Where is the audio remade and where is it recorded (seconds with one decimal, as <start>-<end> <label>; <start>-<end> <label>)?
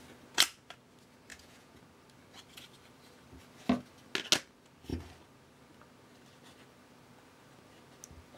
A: 0.0-1.3 recorded; 1.3-1.8 remade; 1.8-8.4 recorded